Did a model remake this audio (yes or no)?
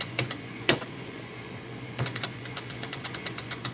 yes